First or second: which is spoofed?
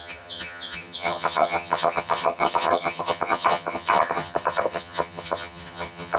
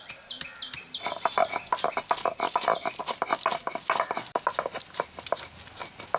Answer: first